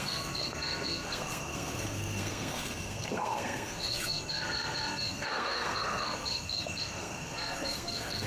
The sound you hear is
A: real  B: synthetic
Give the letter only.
B